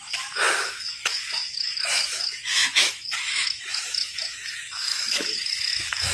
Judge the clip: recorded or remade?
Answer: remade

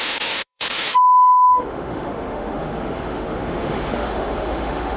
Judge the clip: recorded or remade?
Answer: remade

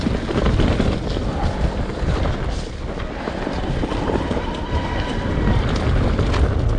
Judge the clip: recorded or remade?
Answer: recorded